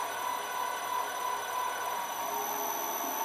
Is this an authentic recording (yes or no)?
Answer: yes